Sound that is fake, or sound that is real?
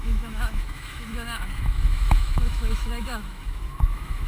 fake